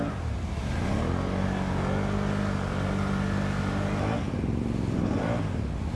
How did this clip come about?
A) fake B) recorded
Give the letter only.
B